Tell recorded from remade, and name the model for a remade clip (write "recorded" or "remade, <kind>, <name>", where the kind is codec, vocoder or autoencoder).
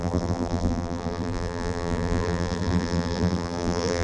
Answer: remade, vocoder, BigVGAN v2